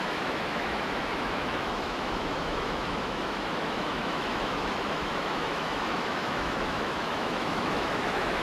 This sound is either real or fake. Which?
fake